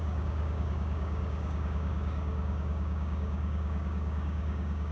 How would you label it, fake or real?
fake